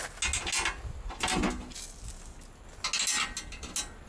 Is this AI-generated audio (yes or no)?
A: no